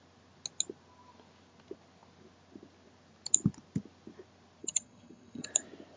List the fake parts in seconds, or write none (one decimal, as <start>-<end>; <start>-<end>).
4.6-5.5

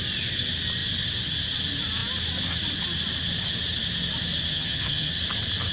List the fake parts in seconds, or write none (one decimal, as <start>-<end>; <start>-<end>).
4.5-5.1

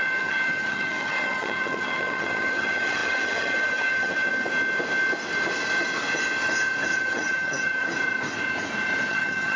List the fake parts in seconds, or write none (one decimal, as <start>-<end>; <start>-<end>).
0.0-4.3; 7.0-7.9; 9.1-9.6